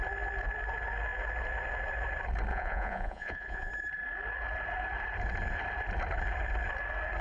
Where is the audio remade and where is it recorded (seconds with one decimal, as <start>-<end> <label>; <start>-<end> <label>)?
0.0-2.5 recorded; 2.5-3.7 remade; 3.7-7.2 recorded